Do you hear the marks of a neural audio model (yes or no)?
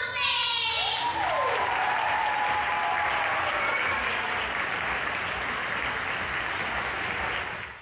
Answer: no